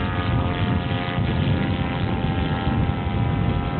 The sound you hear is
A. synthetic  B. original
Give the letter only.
B